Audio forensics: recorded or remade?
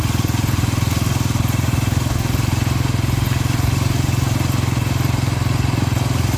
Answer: recorded